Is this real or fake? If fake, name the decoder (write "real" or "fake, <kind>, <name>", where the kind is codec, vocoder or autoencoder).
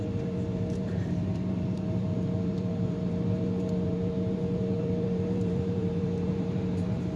fake, vocoder, BigVGAN v2